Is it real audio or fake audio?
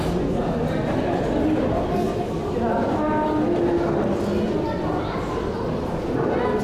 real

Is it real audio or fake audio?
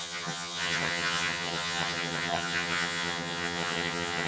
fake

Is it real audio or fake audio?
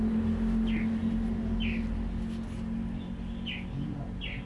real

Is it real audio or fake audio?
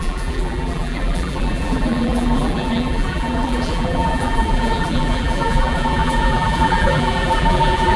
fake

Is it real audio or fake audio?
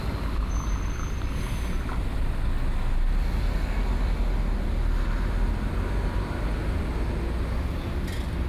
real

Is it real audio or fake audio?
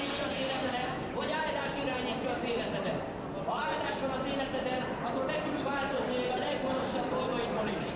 real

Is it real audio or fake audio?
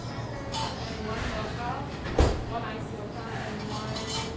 real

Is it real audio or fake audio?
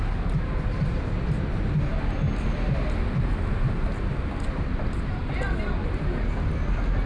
real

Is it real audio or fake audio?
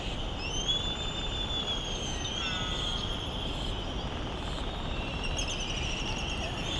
real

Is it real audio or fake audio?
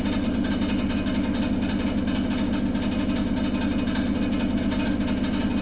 real